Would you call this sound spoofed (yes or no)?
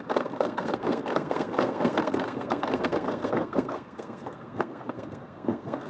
yes